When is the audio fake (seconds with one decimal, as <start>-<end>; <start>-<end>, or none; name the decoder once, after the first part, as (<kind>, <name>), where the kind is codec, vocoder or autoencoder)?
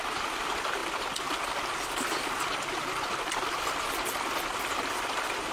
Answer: none